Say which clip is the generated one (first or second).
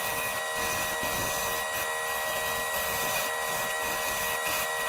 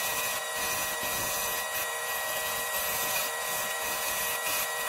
second